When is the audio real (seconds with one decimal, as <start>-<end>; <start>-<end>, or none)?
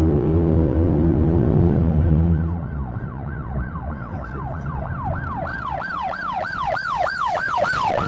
4.9-5.5